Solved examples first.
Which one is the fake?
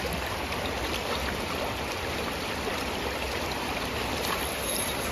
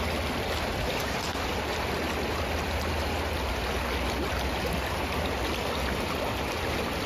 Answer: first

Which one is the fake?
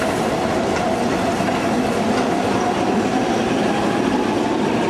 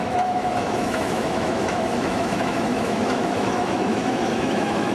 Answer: second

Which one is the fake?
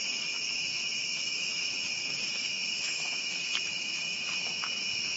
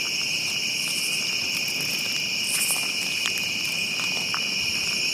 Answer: first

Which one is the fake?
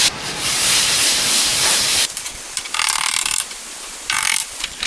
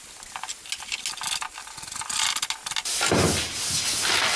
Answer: first